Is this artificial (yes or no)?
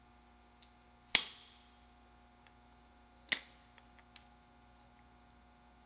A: no